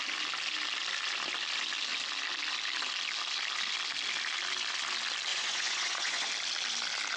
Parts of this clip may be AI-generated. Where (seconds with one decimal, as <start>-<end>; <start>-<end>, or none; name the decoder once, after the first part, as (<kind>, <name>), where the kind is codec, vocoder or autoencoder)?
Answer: 5.3-6.3 (vocoder, Vocos)